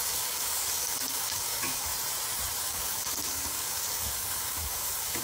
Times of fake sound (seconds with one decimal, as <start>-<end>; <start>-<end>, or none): 0.0-1.9; 2.6-5.2